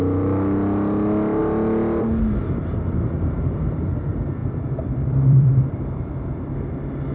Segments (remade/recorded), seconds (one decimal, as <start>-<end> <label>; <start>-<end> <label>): 0.0-4.4 recorded; 4.4-6.0 remade; 6.0-7.1 recorded